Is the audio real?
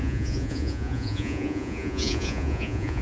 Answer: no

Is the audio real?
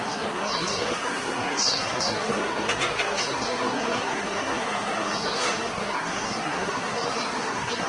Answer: no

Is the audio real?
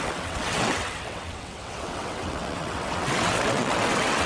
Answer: no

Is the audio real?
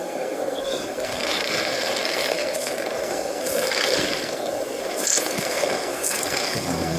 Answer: no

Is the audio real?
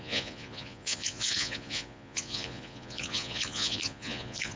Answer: no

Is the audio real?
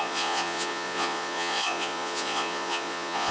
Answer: no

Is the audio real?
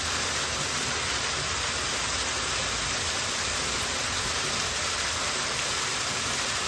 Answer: yes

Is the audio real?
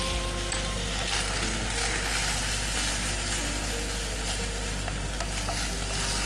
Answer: yes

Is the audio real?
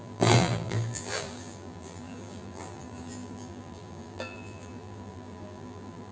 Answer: no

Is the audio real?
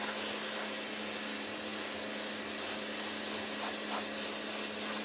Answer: yes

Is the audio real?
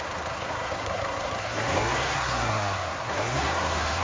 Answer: no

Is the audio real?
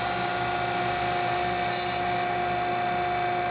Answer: yes